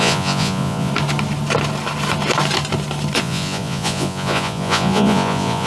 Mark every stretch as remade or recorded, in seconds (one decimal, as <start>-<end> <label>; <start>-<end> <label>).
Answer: 0.0-0.9 remade; 0.9-3.2 recorded; 3.2-5.7 remade